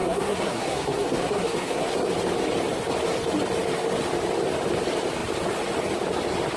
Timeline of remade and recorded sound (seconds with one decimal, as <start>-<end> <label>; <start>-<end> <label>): 0.0-2.1 remade; 2.1-6.6 recorded